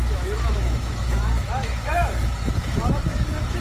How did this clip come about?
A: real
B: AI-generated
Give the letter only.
B